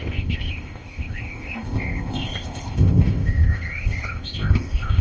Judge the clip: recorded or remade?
remade